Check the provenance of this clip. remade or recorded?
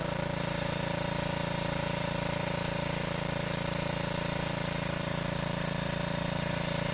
remade